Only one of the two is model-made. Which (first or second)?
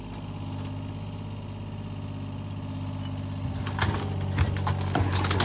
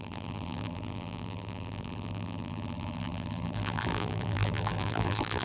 second